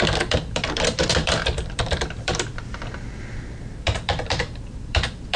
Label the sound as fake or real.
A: fake